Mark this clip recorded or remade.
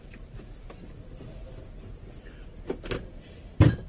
recorded